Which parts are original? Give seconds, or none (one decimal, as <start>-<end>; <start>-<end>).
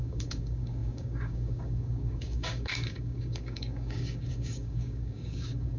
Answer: none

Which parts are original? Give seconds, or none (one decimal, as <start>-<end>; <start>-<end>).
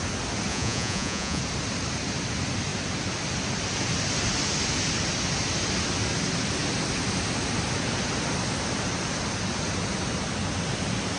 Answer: 0.0-0.5; 1.4-11.2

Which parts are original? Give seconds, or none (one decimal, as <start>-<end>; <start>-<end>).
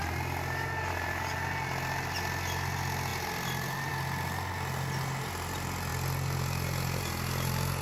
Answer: 0.0-7.8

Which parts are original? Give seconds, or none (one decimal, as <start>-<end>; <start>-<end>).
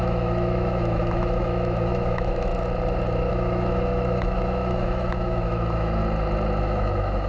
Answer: 2.5-3.3; 6.0-6.6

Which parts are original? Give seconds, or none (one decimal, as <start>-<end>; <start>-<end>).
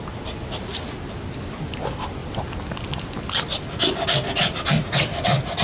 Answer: 0.0-5.6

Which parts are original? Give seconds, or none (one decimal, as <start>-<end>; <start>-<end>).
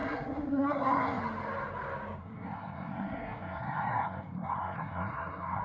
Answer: 1.2-2.2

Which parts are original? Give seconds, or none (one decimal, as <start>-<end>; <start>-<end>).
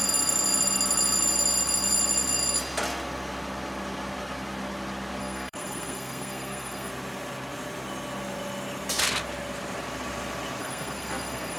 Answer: 0.0-5.2; 6.9-10.6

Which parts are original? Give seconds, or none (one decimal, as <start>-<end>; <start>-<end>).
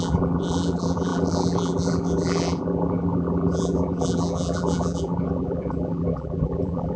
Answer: none